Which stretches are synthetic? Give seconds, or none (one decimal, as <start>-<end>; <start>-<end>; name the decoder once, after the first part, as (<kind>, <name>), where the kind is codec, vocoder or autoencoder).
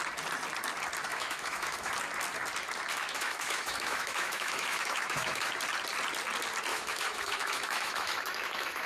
1.1-1.9 (autoencoder, DAC-VAE); 2.9-5.5; 6.7-8.9